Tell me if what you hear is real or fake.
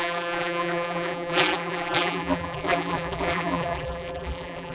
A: fake